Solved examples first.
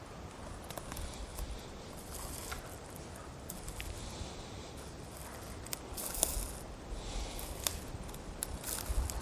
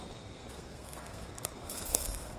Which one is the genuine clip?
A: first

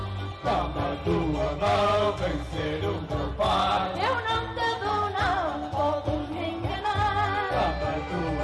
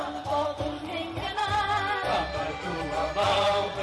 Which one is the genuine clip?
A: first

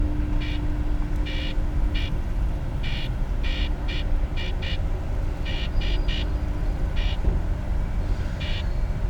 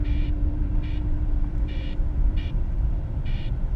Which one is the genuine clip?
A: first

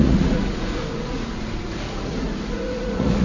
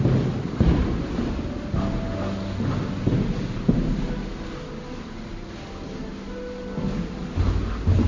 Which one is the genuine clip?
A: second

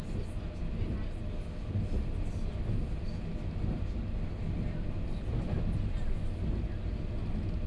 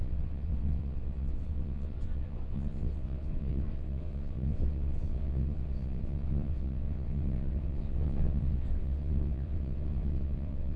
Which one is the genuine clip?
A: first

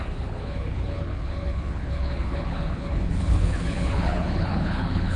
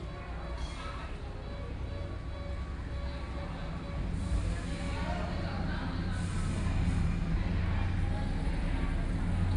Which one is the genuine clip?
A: second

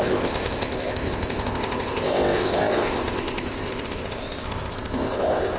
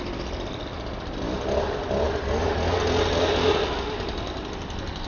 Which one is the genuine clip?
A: second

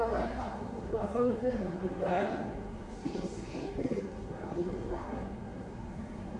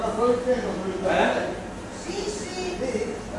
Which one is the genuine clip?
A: second